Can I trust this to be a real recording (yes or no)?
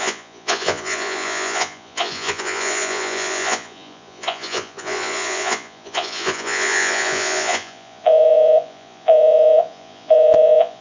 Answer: no